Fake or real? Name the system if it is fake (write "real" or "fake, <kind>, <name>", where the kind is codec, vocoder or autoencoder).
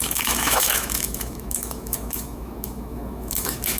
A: fake, autoencoder, DAC-VAE